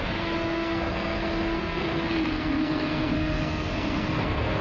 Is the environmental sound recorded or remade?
remade